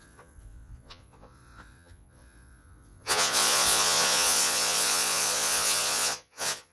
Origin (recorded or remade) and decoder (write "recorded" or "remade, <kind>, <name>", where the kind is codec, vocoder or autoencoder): remade, vocoder, Vocos